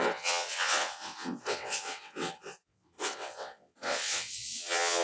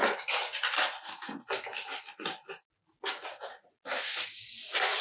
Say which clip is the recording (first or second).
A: second